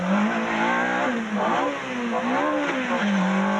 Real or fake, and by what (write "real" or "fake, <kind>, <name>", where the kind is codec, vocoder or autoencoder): real